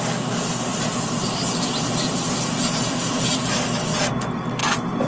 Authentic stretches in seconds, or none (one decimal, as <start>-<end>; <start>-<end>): 0.0-0.7; 3.4-4.6